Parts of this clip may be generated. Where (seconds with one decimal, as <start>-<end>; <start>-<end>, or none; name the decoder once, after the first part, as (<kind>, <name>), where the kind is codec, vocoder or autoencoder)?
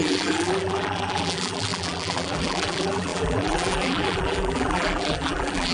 0.0-5.7 (vocoder, BigVGAN v2)